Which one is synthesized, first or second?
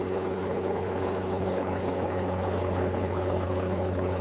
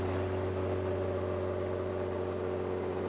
first